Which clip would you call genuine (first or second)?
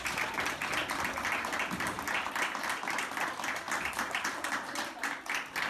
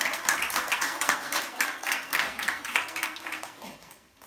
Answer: first